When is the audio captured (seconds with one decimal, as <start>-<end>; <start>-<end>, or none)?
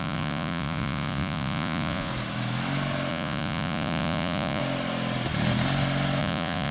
2.1-3.1; 4.6-6.2